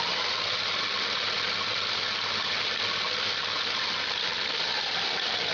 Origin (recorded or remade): recorded